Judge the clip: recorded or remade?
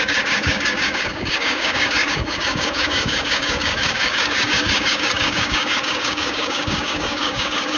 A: remade